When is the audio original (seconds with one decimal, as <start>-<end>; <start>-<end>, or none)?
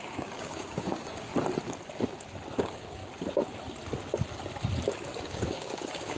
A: 1.3-2.6; 3.0-5.2